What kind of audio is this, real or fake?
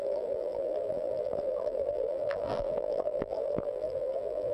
fake